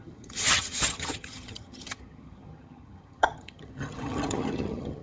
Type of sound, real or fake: fake